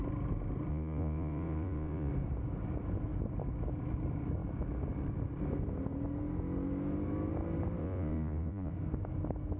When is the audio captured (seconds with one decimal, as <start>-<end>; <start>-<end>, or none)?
0.0-0.7; 2.1-7.8; 8.7-9.6